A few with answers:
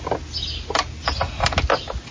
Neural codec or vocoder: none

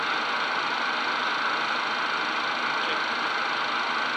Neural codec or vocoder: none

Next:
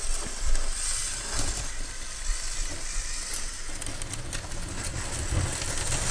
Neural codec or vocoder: none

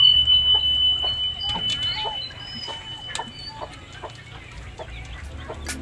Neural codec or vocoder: none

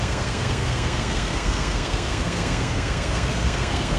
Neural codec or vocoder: codec, SNAC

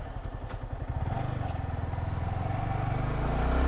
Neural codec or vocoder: none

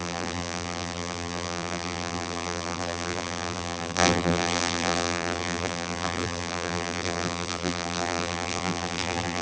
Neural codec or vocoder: vocoder, BigVGAN v2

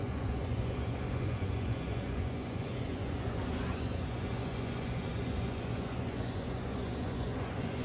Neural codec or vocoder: vocoder, Vocos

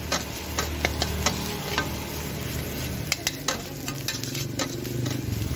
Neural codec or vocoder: none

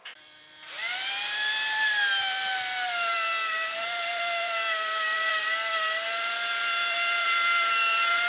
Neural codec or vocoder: vocoder, BigVGAN v2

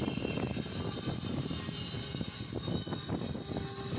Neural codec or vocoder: none